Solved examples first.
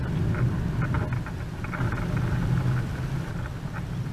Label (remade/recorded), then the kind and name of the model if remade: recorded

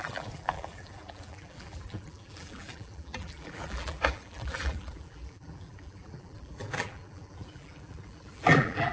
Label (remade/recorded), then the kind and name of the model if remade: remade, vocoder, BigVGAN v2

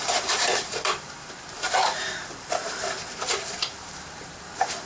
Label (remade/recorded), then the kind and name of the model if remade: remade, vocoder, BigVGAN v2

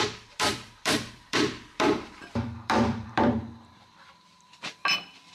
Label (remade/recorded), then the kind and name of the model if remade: remade, vocoder, BigVGAN v2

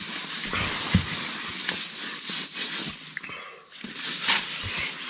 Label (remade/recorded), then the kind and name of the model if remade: recorded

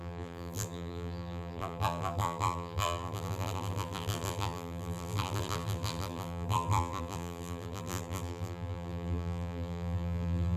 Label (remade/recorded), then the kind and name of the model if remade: remade, vocoder, BigVGAN v2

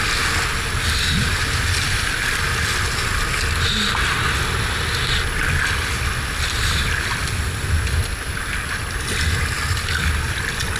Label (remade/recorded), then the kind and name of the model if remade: recorded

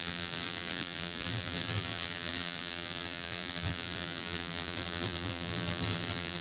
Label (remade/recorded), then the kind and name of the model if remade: remade, vocoder, BigVGAN v2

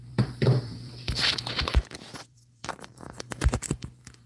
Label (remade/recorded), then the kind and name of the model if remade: remade, vocoder, BigVGAN v2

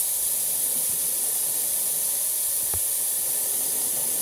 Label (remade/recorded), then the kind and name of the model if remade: remade, vocoder, BigVGAN v2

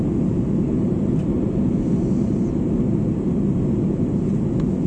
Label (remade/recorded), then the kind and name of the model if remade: recorded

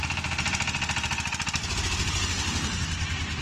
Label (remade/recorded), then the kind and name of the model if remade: recorded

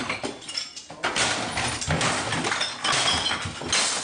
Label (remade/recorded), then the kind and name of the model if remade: recorded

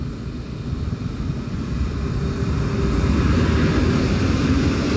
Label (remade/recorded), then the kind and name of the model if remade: recorded